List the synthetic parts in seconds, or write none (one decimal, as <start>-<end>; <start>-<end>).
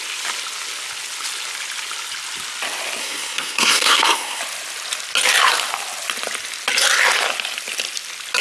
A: 3.0-4.4